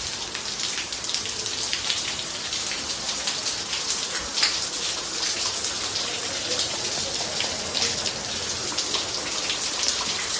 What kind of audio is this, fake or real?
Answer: real